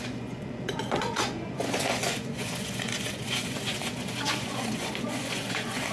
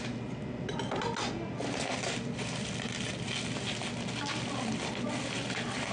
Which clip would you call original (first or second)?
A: second